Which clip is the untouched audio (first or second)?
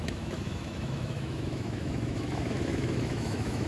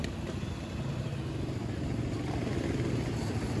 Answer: second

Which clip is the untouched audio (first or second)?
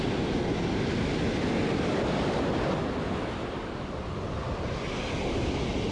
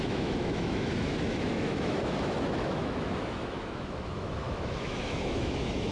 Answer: first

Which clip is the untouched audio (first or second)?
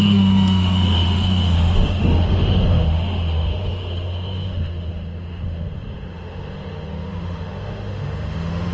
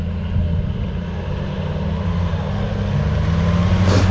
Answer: second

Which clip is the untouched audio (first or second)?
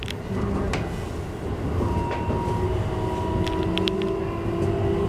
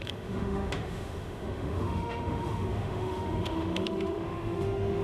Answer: first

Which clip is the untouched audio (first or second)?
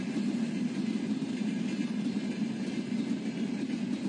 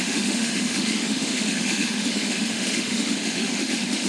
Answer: first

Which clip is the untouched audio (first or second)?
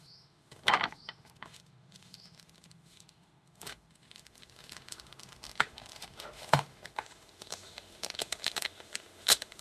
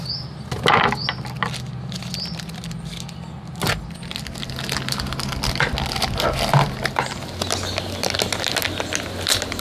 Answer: second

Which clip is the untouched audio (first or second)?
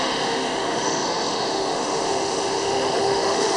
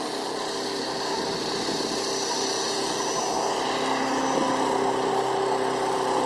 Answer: second